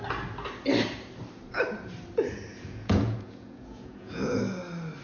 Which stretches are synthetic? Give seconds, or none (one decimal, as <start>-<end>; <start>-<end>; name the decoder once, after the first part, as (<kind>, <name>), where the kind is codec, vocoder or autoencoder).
2.5-4.4 (vocoder, Vocos)

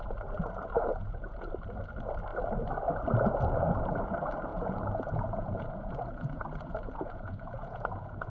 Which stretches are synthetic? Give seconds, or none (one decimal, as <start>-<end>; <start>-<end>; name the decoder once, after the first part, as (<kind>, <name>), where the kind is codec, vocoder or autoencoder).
0.9-1.5 (vocoder, Vocos); 4.5-8.3

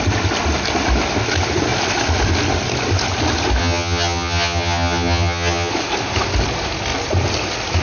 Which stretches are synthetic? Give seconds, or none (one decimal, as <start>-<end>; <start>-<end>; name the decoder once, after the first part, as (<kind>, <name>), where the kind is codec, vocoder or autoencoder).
3.6-5.7 (vocoder, HiFi-GAN)